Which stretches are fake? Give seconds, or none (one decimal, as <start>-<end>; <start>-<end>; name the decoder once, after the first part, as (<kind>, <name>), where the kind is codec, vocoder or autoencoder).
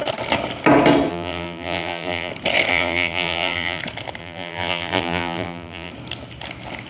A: 1.1-2.3 (vocoder, BigVGAN v2); 2.7-3.8; 4.2-5.9